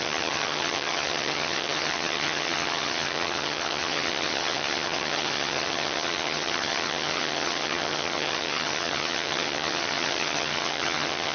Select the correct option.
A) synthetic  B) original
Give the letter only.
A